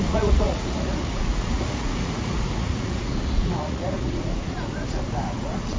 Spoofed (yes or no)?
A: yes